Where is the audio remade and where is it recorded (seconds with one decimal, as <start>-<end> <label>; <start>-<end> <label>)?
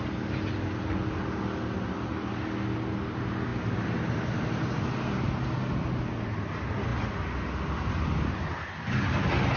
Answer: 0.0-9.6 recorded